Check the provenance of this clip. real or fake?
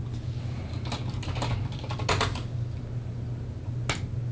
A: real